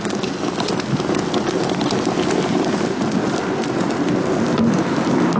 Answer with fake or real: real